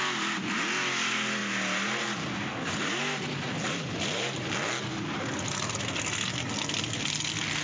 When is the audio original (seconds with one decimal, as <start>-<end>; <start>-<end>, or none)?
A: 0.0-7.6